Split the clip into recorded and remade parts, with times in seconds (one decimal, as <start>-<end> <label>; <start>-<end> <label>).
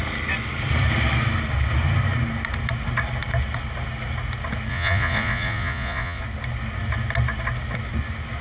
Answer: 0.0-4.7 recorded; 4.7-6.2 remade; 6.2-8.4 recorded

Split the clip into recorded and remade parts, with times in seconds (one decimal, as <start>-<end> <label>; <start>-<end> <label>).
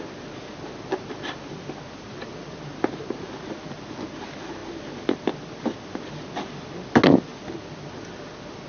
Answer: 0.0-8.7 recorded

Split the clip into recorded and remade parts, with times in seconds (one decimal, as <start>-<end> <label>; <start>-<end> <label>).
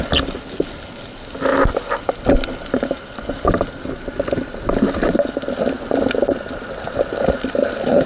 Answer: 0.0-8.1 recorded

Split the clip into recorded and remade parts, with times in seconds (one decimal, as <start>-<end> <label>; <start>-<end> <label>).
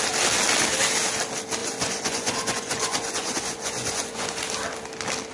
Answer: 0.0-1.6 recorded; 1.6-4.4 remade; 4.4-5.3 recorded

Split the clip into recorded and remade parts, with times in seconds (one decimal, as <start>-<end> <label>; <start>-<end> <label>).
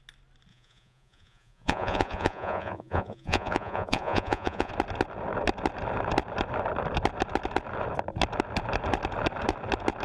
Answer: 0.0-0.5 recorded; 0.5-4.7 remade; 4.7-10.0 recorded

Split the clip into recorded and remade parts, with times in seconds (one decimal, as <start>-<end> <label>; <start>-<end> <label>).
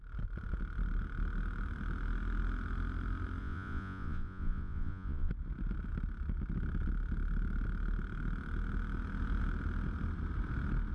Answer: 0.0-3.4 recorded; 3.4-5.3 remade; 5.3-10.9 recorded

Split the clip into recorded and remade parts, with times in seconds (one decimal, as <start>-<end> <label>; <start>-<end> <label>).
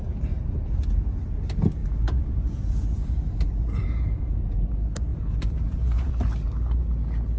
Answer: 0.0-1.8 recorded; 1.8-4.6 remade; 4.6-5.1 recorded; 5.1-6.1 remade; 6.1-7.4 recorded